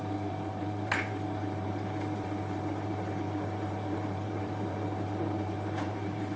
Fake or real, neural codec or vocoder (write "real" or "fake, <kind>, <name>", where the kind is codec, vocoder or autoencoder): fake, vocoder, BigVGAN v2